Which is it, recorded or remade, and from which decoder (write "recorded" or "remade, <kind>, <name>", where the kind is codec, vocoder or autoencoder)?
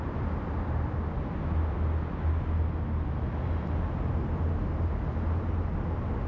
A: recorded